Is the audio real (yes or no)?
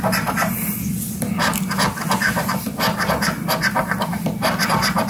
yes